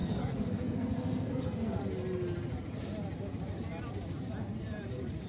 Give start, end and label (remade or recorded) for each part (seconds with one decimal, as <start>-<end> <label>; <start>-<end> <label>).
0.0-1.8 remade; 1.8-5.3 recorded